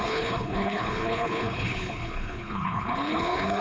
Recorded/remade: remade